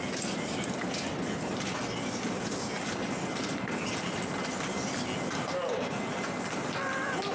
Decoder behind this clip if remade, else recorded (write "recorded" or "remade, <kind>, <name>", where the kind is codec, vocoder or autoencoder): recorded